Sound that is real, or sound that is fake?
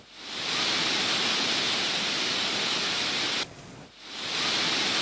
real